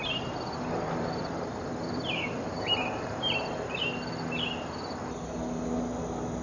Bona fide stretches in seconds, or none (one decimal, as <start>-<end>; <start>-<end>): 3.8-6.4